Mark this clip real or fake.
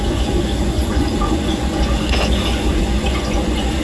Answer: fake